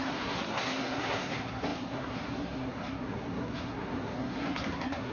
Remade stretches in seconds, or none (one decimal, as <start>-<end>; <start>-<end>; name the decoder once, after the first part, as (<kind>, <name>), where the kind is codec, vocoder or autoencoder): 0.0-5.1 (codec, SNAC)